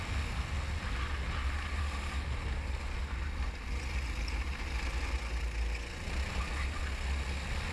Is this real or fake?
real